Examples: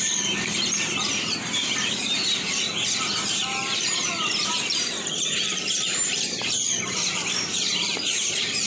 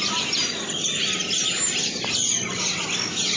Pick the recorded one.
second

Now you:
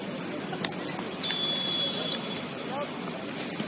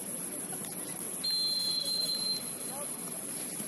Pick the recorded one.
first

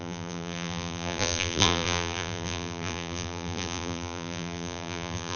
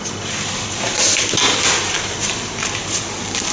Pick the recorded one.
second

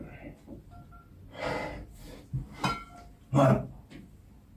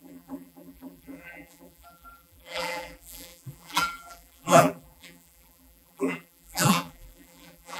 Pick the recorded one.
first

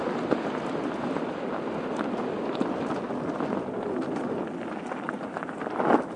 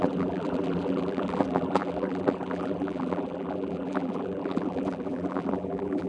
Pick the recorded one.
first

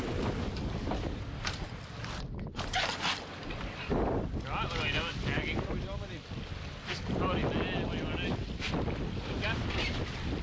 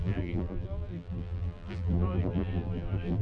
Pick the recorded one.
first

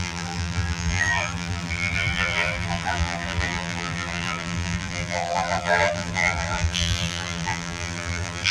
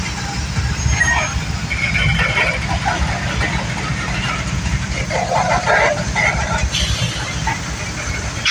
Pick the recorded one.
second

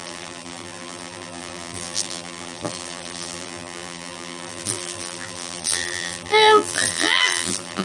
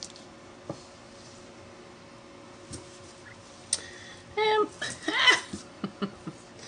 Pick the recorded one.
second